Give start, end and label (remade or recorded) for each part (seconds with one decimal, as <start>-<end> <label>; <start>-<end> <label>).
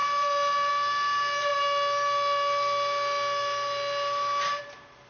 0.0-5.1 recorded